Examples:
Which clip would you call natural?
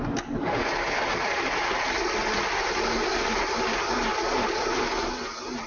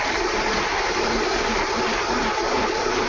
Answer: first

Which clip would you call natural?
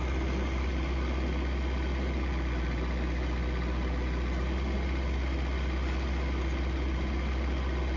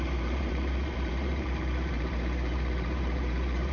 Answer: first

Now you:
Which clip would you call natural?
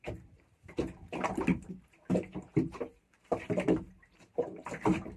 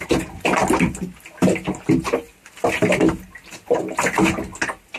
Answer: second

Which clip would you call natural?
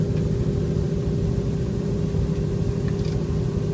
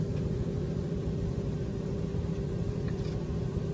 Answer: first